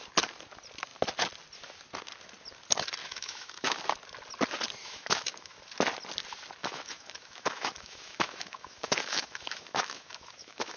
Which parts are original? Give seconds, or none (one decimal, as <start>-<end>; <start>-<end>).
0.0-3.0; 3.8-4.8; 5.6-6.6